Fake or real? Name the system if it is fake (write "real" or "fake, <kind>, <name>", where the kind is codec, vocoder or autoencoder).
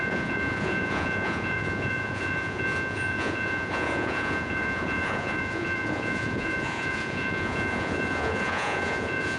fake, vocoder, Vocos